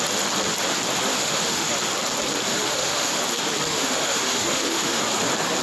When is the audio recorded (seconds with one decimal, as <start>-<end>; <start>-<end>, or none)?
0.0-1.1; 1.7-2.5; 3.2-3.7; 5.0-5.6